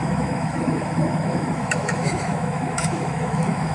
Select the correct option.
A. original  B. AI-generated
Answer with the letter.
B